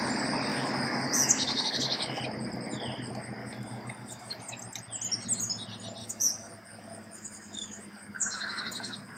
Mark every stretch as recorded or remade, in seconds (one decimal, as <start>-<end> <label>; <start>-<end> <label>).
0.0-0.5 recorded; 0.5-2.2 remade; 2.2-3.4 recorded; 3.4-4.4 remade; 4.4-6.0 recorded; 6.0-9.2 remade